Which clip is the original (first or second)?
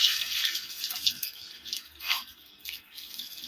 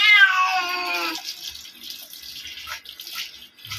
second